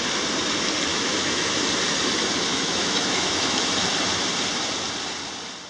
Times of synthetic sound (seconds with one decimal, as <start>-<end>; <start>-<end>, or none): 0.9-1.6; 2.5-3.7